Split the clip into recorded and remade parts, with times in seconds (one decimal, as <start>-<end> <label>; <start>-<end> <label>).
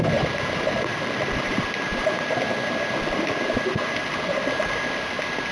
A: 0.0-0.9 recorded; 0.9-4.0 remade; 4.0-5.5 recorded